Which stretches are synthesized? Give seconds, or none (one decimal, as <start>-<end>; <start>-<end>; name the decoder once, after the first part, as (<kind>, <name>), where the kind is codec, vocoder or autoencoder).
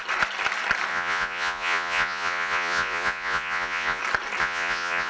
0.9-4.0 (vocoder, Vocos); 4.4-5.1